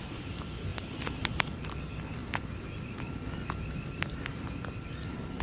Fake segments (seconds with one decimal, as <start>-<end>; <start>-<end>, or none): none